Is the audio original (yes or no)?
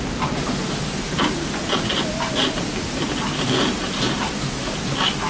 yes